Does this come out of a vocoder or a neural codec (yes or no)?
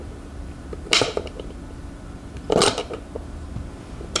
no